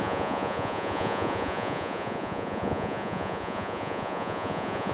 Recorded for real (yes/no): no